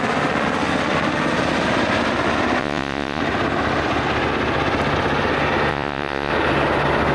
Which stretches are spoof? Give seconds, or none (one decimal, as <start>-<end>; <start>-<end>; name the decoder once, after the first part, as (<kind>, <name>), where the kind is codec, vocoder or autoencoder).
2.6-3.2 (vocoder, Vocos); 5.7-6.3